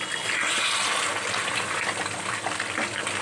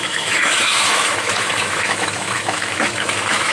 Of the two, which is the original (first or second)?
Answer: first